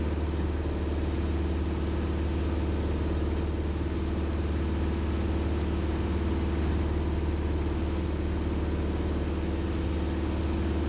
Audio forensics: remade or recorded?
recorded